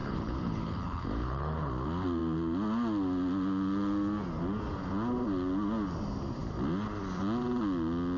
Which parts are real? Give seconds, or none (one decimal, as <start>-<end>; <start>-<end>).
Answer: 1.7-8.2